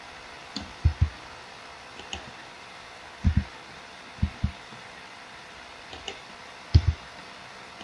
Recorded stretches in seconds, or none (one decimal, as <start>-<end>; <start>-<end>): 0.4-1.6